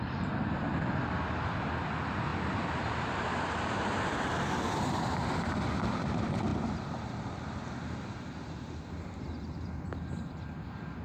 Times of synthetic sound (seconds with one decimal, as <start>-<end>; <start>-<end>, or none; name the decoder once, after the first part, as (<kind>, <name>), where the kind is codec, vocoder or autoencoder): 0.0-6.5 (vocoder, BigVGAN v2); 7.2-11.0